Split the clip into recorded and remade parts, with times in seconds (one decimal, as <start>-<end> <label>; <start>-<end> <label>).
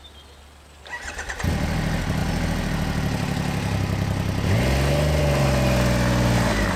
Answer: 0.0-6.8 recorded